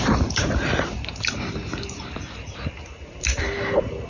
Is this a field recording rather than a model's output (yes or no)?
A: no